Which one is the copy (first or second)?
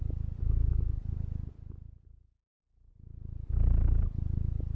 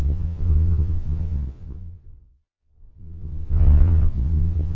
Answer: second